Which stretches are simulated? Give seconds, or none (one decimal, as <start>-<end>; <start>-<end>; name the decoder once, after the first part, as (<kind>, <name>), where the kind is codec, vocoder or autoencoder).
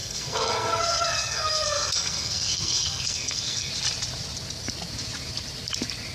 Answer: 0.0-3.7 (codec, SNAC)